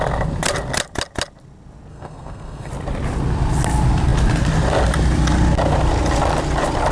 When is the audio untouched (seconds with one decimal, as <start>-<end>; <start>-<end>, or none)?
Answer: 0.0-1.9; 2.7-6.9